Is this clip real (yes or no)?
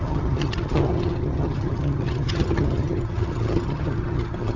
no